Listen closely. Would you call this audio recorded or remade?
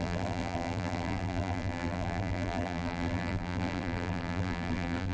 remade